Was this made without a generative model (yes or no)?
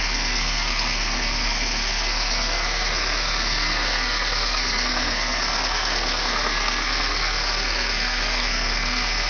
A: no